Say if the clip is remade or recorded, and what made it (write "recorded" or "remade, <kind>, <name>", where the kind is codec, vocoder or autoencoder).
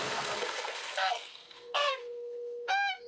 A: remade, codec, SNAC